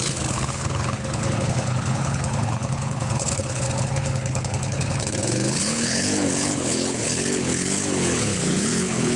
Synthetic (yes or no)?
yes